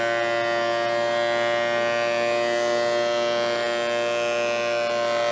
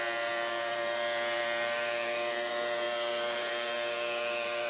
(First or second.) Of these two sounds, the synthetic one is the second